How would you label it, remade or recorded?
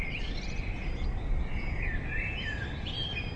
recorded